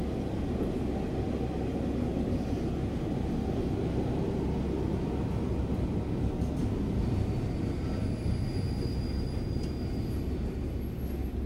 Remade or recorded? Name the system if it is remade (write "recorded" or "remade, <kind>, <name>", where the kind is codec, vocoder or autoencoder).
recorded